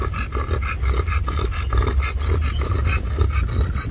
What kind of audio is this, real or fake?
real